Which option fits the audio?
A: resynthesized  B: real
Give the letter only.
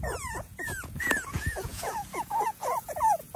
A